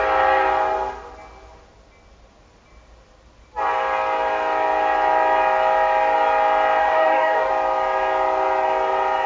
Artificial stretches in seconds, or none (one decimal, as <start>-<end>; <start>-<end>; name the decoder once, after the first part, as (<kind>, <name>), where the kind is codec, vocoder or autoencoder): 6.8-7.5 (codec, DAC)